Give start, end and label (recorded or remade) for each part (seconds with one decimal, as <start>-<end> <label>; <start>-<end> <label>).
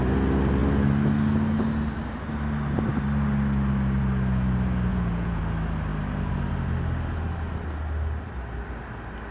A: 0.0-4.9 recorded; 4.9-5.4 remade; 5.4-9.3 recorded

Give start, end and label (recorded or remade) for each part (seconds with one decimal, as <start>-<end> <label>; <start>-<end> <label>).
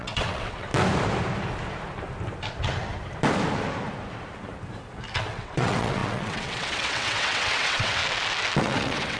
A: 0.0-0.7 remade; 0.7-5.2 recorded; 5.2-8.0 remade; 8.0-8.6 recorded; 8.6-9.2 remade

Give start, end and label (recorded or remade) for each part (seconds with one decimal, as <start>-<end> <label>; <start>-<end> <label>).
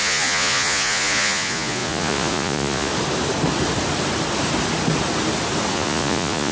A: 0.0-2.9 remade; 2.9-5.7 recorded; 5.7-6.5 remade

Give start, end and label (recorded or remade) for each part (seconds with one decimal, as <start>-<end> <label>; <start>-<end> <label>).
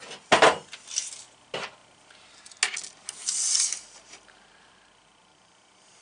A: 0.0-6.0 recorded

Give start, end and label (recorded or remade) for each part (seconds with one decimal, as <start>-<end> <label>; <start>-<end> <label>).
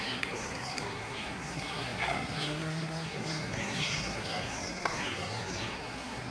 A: 0.0-6.3 remade